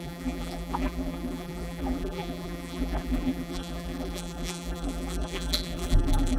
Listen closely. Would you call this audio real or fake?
fake